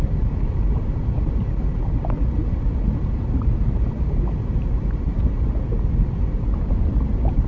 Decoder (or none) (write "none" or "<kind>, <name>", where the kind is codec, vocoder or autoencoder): none